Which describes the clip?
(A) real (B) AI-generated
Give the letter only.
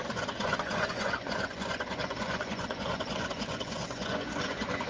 B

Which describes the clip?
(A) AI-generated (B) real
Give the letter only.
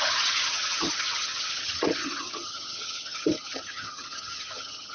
A